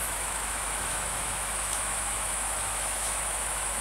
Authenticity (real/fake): fake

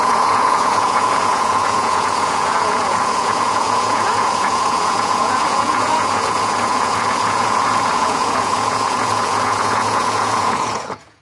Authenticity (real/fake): fake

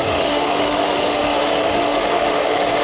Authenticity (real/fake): fake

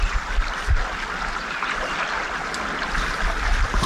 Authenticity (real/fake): real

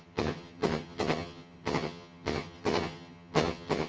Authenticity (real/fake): fake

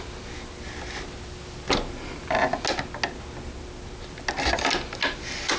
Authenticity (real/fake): real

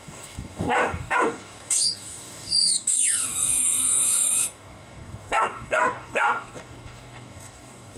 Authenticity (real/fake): fake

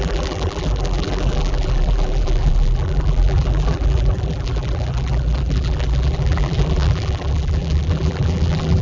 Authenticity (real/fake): fake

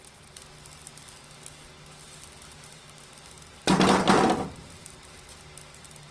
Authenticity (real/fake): real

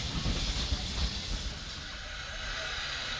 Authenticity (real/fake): real